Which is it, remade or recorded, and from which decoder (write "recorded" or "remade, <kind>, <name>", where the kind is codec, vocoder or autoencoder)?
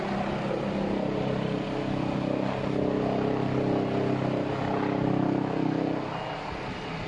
recorded